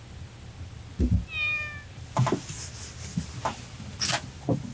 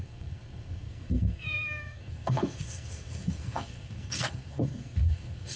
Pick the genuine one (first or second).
first